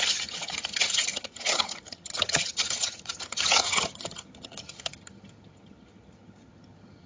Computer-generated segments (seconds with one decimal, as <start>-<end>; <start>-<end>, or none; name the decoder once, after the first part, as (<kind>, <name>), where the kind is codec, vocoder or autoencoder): 0.0-7.1 (vocoder, HiFi-GAN)